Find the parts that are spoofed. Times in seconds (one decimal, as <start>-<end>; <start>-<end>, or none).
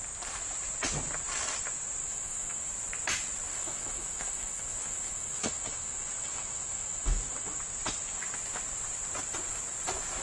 2.0-2.7; 3.5-7.6